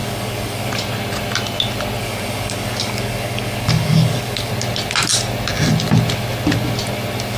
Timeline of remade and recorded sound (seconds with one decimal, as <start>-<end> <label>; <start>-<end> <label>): 0.0-0.7 remade; 0.7-2.0 recorded; 2.0-4.5 remade; 4.5-7.4 recorded